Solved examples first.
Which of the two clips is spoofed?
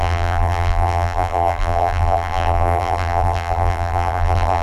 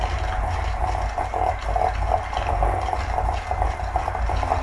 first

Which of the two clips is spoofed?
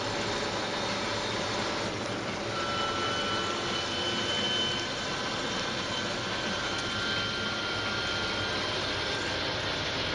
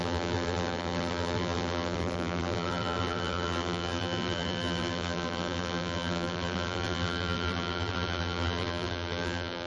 second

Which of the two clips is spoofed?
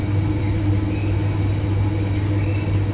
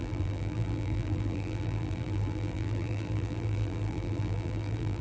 second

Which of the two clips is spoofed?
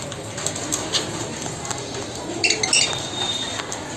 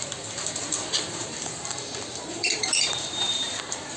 second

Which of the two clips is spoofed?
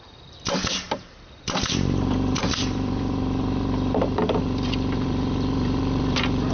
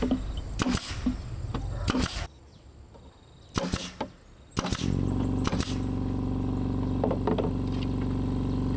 first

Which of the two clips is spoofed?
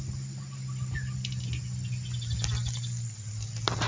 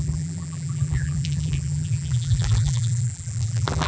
second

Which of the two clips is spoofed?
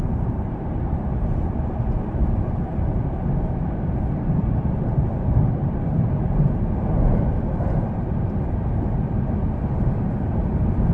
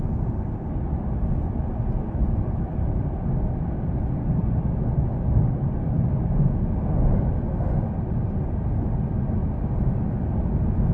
first